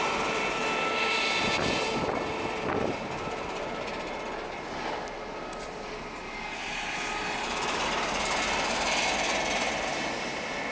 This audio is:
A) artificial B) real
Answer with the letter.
B